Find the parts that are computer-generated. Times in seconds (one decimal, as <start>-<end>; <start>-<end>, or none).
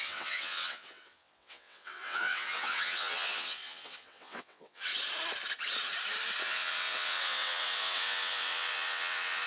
0.0-4.9; 6.4-9.5